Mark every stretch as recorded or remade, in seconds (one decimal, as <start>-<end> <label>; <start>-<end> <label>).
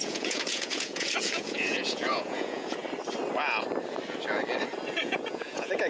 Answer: 0.0-2.8 remade; 2.8-5.0 recorded; 5.0-5.9 remade